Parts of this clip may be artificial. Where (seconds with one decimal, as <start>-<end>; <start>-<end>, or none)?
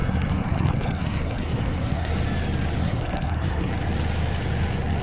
0.0-2.1; 2.8-3.7